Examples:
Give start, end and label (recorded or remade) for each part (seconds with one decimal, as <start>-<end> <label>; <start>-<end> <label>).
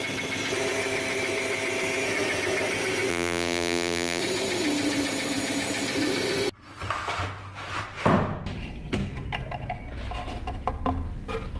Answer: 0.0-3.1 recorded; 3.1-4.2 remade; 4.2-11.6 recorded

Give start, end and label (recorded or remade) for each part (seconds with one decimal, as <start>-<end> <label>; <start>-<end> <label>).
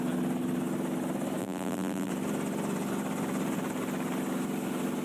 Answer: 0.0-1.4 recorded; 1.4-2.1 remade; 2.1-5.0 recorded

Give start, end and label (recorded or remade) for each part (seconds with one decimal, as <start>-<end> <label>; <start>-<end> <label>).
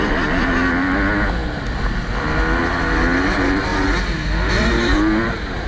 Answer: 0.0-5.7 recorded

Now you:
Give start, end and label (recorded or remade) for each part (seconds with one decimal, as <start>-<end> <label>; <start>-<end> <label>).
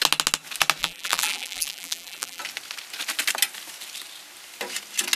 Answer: 0.0-0.8 recorded; 0.8-2.4 remade; 2.4-5.2 recorded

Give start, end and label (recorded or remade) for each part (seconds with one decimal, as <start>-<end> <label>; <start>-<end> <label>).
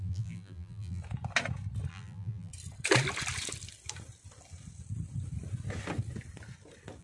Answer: 0.0-1.0 remade; 1.0-1.9 recorded; 1.9-2.5 remade; 2.5-7.0 recorded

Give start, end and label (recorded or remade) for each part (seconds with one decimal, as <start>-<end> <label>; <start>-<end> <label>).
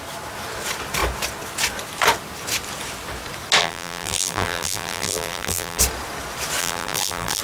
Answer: 0.0-3.6 recorded; 3.6-5.8 remade; 5.8-6.6 recorded; 6.6-7.4 remade